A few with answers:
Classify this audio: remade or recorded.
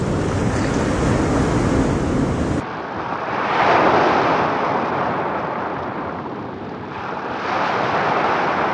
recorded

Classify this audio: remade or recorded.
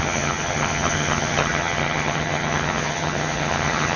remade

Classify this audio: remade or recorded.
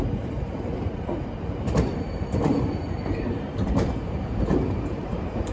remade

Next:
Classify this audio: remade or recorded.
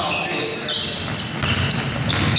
recorded